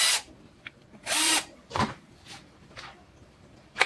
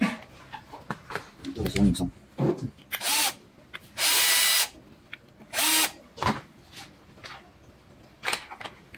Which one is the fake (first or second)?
first